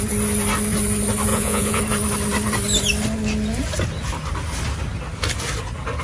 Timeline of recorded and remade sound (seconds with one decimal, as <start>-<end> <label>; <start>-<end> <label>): 0.0-1.3 recorded; 1.3-1.8 remade; 1.8-6.0 recorded

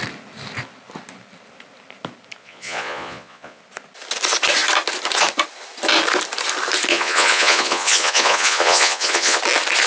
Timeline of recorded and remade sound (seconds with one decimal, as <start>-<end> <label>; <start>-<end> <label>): 0.0-2.4 recorded; 2.4-3.6 remade; 3.6-6.9 recorded; 6.9-9.4 remade; 9.4-9.9 recorded

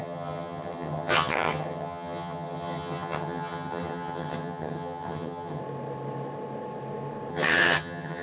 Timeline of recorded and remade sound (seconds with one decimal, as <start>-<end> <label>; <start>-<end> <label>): 0.0-5.6 remade; 5.6-7.3 recorded; 7.3-8.2 remade